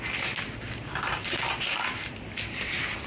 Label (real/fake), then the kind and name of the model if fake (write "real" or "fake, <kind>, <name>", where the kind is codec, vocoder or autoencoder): real